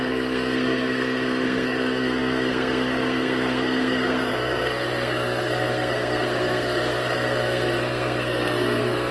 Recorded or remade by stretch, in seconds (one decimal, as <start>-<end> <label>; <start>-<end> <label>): 0.0-9.1 remade